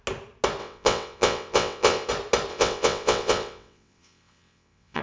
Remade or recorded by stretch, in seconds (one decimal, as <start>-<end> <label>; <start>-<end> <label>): 0.0-0.6 recorded; 0.6-2.1 remade; 2.1-2.5 recorded; 2.5-5.0 remade